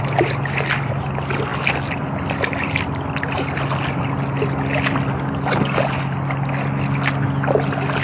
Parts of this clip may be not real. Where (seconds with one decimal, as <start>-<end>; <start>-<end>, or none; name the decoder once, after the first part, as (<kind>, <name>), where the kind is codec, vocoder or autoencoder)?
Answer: none